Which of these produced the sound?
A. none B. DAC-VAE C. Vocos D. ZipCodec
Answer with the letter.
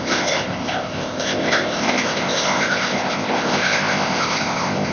D